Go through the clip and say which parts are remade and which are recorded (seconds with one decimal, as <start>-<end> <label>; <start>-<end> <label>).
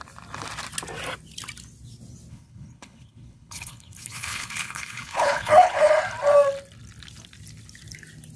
0.0-2.3 recorded; 2.3-5.9 remade; 5.9-8.4 recorded